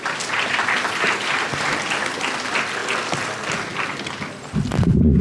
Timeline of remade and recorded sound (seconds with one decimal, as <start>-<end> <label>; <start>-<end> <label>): 0.0-5.2 recorded

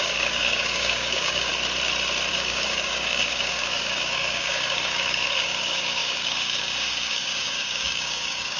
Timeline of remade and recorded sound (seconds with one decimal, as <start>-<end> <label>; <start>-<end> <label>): 0.0-1.5 remade; 1.5-2.3 recorded; 2.3-8.6 remade

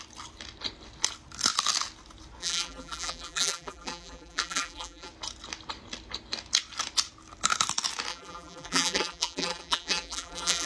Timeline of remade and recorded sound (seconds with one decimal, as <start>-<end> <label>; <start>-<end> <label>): 0.0-2.4 recorded; 2.4-5.1 remade; 5.1-8.1 recorded; 8.1-10.7 remade

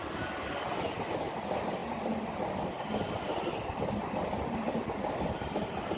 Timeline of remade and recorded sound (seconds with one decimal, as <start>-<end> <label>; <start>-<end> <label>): 0.0-6.0 recorded

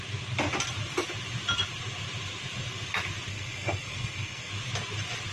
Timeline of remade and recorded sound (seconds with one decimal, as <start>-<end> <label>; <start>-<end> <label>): 0.0-3.3 recorded; 3.3-4.5 remade; 4.5-5.3 recorded